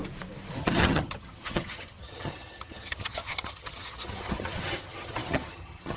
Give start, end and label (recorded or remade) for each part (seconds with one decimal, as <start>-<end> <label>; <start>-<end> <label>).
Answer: 0.0-0.6 recorded; 0.6-6.0 remade